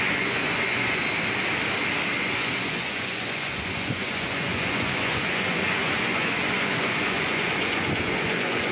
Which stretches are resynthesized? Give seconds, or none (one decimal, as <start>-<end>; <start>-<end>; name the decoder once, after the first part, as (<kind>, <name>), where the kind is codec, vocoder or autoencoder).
0.0-1.0 (vocoder, Vocos); 2.2-8.7